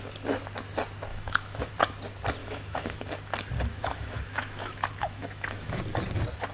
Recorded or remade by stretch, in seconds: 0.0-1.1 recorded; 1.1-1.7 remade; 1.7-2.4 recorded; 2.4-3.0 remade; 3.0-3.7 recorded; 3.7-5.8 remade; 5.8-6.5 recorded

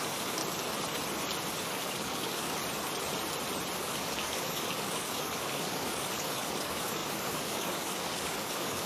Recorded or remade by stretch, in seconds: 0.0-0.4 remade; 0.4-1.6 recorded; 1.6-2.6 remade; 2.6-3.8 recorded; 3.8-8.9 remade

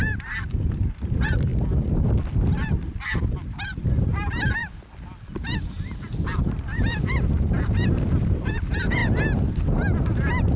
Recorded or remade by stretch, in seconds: 0.0-4.6 remade; 4.6-5.6 recorded; 5.6-9.0 remade; 9.0-10.6 recorded